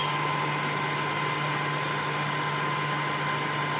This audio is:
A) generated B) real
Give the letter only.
B